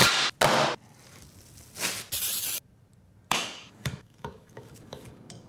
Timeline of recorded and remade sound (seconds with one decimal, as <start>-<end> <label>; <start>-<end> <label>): 0.0-3.3 recorded; 3.3-5.5 remade